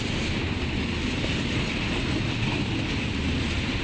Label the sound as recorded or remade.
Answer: recorded